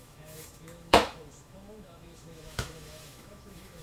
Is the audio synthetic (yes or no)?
yes